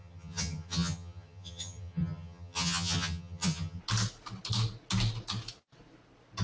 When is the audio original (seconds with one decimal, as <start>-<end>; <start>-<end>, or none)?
3.8-6.4